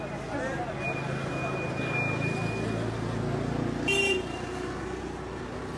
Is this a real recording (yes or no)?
yes